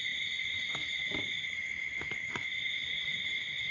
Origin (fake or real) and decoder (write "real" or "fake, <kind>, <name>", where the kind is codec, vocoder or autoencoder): fake, vocoder, BigVGAN v2